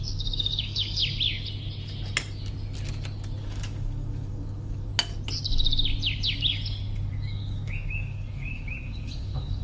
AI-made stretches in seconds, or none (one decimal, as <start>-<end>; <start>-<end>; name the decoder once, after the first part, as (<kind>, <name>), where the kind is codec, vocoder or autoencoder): 0.0-1.0 (codec, DAC); 3.4-4.9; 7.1-9.6